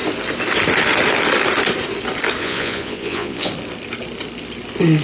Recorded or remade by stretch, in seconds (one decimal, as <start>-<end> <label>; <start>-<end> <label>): 0.0-2.4 recorded; 2.4-3.5 remade; 3.5-5.0 recorded